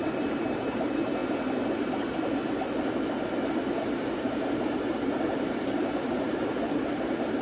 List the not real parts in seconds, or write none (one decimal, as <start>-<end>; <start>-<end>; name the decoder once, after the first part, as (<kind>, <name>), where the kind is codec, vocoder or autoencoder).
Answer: 0.0-1.2 (vocoder, BigVGAN v2); 3.9-7.4